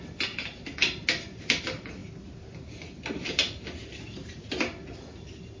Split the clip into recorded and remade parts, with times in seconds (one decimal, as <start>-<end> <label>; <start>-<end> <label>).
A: 0.0-5.6 recorded